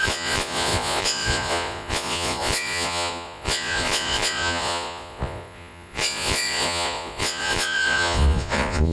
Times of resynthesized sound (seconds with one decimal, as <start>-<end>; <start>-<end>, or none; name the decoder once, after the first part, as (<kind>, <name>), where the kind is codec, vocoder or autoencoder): 0.0-8.9 (vocoder, Vocos)